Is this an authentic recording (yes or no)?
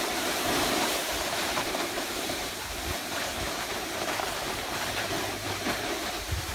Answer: no